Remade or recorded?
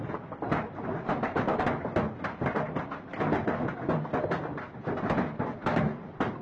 recorded